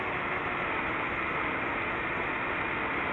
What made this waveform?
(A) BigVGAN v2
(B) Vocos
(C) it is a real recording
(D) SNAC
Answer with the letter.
C